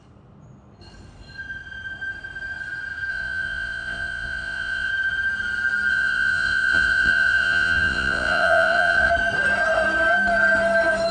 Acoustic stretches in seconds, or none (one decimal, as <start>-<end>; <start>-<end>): 0.0-3.1; 4.9-5.9; 9.1-11.1